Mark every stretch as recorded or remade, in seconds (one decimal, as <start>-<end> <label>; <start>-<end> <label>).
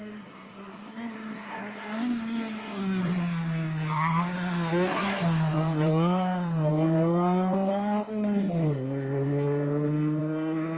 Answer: 0.0-10.8 remade